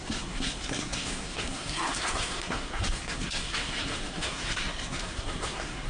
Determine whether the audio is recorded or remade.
remade